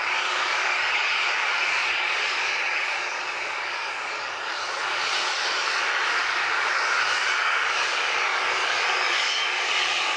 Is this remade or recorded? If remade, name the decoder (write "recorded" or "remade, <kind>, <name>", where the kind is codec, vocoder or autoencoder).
remade, codec, DAC